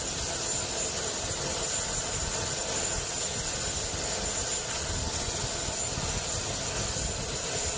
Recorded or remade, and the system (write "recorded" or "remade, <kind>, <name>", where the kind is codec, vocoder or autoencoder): recorded